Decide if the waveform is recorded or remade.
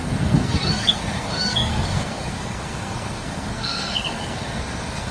remade